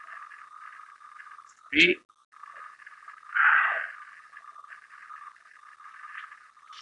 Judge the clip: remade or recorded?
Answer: recorded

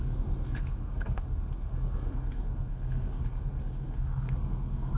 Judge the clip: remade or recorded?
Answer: remade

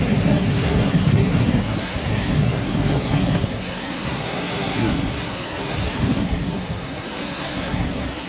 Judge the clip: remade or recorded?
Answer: remade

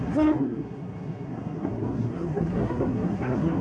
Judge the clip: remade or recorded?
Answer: remade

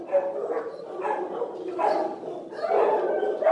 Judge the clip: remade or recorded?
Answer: recorded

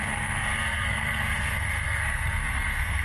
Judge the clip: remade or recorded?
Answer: remade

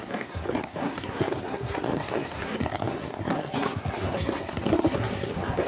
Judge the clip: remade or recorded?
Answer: remade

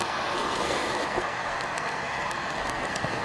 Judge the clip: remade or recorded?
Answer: remade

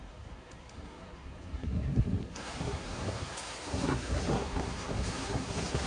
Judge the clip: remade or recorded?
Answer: remade